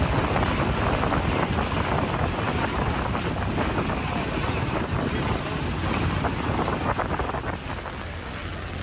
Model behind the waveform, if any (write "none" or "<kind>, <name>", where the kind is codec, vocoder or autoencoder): none